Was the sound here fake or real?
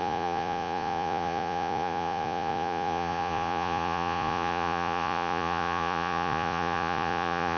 fake